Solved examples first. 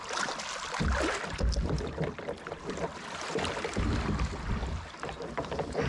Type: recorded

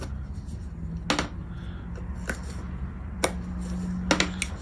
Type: recorded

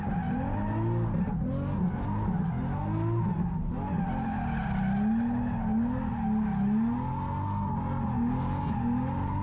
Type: recorded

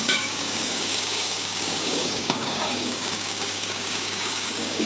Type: remade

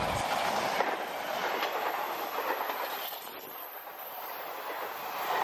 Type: recorded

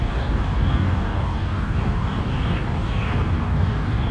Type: remade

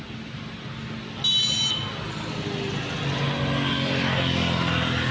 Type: recorded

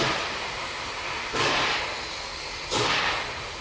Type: recorded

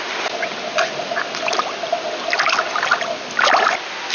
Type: recorded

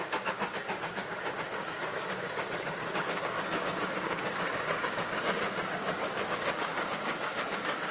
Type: remade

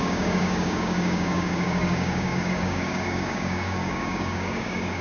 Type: remade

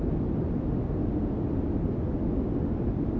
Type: recorded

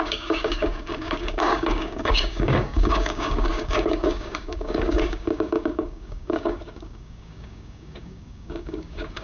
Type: remade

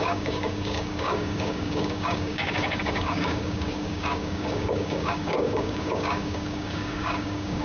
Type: remade